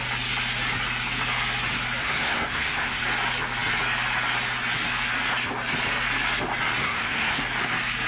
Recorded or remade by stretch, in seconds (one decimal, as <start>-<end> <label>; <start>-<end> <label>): 0.0-2.0 recorded; 2.0-3.0 remade; 3.0-6.8 recorded; 6.8-7.4 remade; 7.4-8.1 recorded